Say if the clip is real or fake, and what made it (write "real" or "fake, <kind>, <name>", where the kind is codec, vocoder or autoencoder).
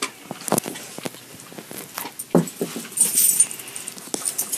real